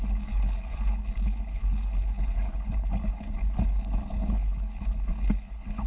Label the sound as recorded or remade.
remade